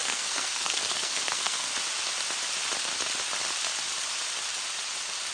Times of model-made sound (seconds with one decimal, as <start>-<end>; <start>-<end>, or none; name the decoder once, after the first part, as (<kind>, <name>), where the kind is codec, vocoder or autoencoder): 0.0-1.7 (codec, SNAC)